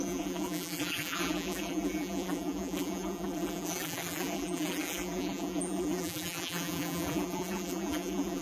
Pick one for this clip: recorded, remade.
remade